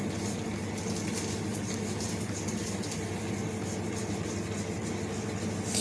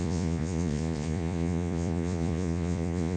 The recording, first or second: first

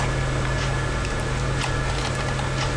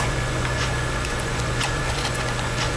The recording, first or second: first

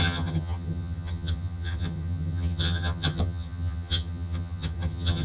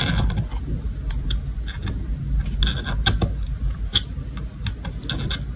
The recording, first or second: second